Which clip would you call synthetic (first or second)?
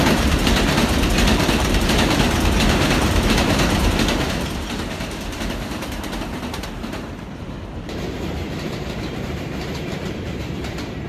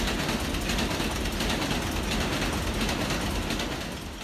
first